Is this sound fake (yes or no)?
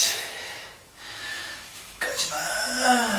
yes